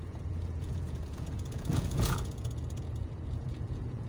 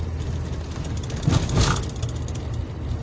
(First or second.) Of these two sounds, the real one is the second